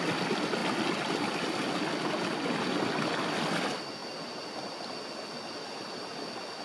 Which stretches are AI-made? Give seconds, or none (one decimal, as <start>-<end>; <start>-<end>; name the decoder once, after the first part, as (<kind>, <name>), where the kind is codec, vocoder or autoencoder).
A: none